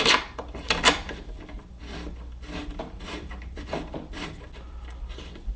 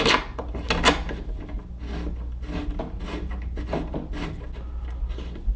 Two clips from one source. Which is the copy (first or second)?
first